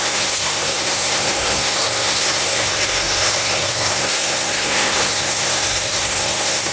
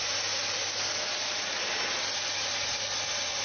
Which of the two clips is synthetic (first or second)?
first